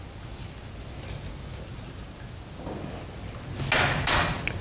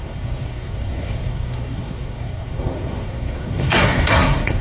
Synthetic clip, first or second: second